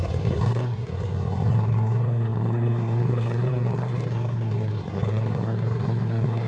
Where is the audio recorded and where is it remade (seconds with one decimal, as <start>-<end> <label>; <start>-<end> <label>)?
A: 0.0-6.5 remade